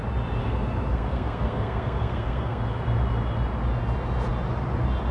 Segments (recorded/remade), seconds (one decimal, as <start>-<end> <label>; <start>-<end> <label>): 0.0-0.4 recorded; 0.4-2.6 remade; 2.6-5.1 recorded